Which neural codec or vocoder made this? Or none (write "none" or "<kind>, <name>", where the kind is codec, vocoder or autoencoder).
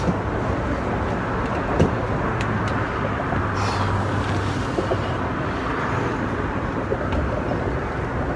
none